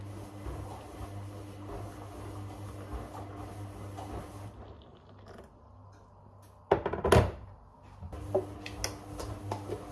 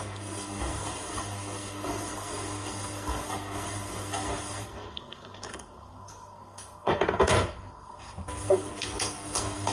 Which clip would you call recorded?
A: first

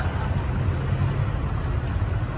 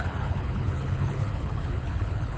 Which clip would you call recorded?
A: first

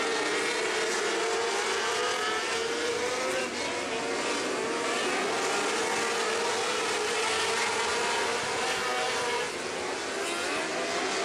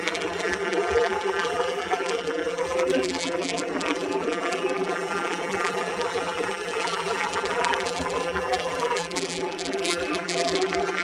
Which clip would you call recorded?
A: first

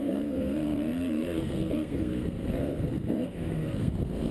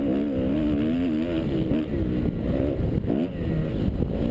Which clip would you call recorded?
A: second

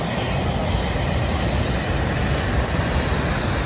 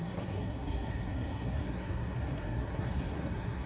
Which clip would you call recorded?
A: first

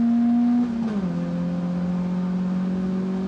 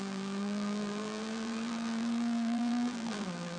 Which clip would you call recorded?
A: first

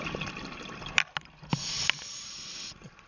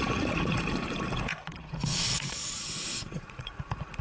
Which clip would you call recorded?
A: first